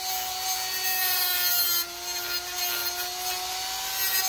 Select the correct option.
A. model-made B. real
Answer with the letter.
B